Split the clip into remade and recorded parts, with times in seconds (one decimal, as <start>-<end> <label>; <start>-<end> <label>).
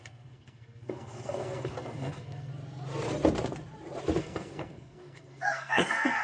0.0-2.5 remade; 2.5-4.2 recorded; 4.2-6.2 remade